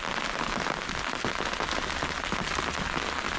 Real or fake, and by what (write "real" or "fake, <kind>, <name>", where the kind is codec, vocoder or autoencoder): real